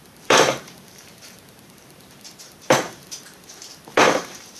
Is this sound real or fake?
fake